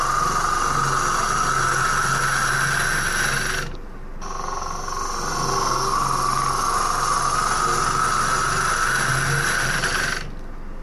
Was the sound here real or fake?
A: real